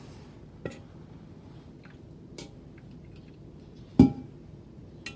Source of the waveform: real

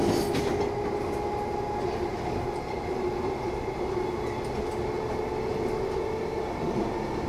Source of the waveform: real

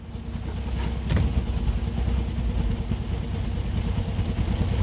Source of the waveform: real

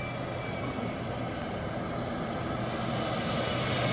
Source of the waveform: real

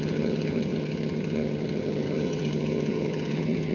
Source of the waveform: fake